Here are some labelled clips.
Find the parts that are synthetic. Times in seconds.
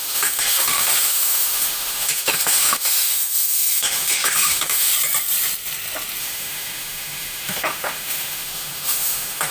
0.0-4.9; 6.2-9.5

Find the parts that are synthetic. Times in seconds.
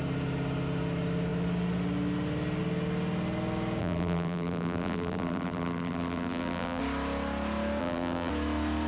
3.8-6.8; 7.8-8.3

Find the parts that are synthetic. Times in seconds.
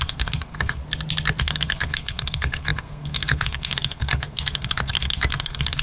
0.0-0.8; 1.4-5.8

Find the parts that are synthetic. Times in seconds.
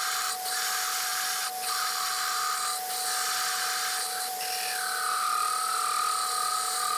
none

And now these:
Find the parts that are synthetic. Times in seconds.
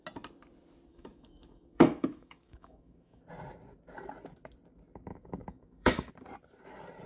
0.9-3.2; 5.1-6.1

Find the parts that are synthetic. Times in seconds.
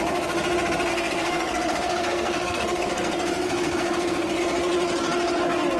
0.9-4.4